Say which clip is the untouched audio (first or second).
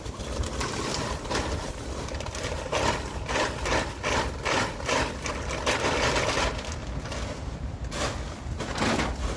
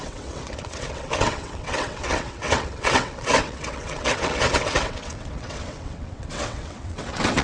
first